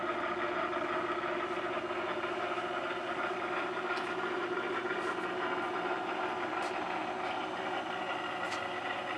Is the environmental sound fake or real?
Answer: real